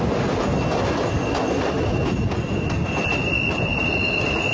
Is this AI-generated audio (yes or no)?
no